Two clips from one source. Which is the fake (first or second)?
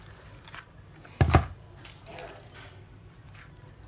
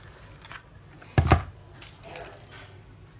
first